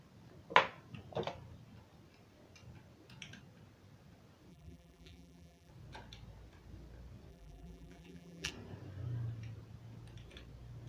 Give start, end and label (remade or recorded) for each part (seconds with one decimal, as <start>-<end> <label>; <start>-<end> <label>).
0.0-4.5 recorded; 4.5-5.7 remade; 5.7-7.3 recorded; 7.3-8.5 remade; 8.5-10.9 recorded